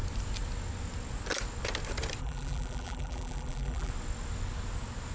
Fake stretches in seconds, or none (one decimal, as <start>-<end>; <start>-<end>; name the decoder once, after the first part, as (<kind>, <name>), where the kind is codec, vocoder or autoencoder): 2.2-3.9 (vocoder, BigVGAN v2)